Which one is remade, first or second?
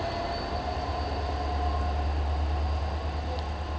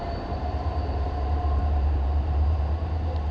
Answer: second